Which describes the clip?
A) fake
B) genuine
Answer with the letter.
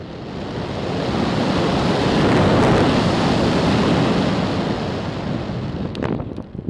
B